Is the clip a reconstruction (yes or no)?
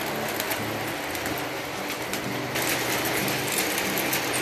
no